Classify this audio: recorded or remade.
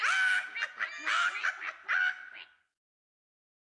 recorded